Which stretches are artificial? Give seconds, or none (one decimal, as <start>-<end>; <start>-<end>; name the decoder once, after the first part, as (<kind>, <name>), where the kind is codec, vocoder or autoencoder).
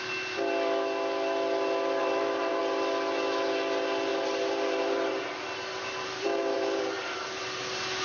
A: 2.0-2.6 (vocoder, BigVGAN v2); 4.1-7.4